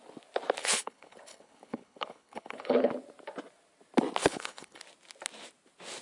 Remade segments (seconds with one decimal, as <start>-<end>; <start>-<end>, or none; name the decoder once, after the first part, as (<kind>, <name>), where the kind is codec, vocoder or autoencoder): 0.6-2.9 (codec, HILCodec); 4.2-4.8